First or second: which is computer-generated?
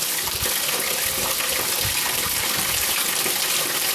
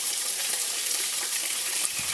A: second